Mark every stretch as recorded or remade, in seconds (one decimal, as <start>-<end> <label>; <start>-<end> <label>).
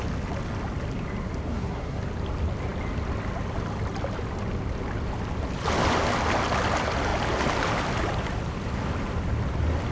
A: 0.0-1.5 recorded; 1.5-2.0 remade; 2.0-9.9 recorded